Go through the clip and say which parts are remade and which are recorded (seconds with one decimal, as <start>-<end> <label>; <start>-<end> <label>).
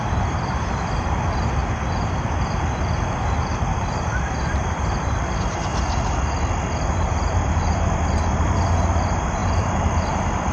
0.0-1.6 remade; 1.6-2.2 recorded; 2.2-5.7 remade; 5.7-6.9 recorded; 6.9-10.5 remade